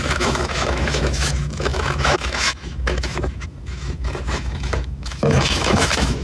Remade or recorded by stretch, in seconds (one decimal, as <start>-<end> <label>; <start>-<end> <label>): 0.0-6.2 remade